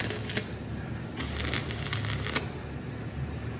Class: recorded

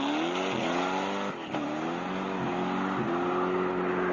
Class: recorded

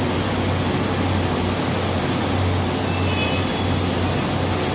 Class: recorded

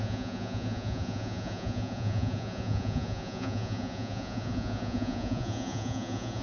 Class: remade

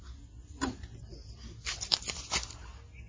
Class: recorded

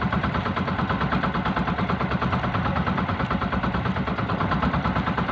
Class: recorded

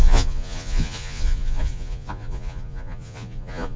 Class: remade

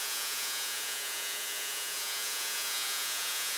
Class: remade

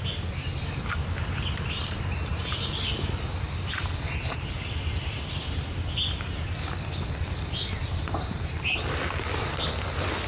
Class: recorded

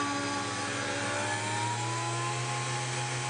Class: recorded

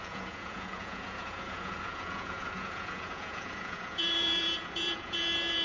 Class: remade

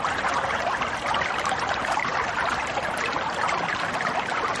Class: recorded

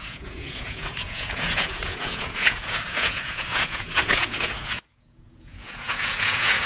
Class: remade